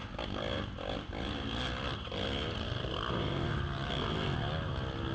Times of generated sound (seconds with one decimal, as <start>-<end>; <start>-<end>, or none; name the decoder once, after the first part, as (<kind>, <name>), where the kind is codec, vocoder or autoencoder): none